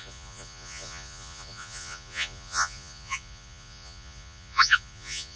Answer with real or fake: fake